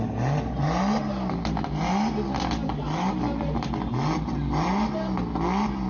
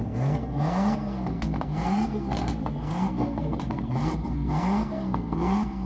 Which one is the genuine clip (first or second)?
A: first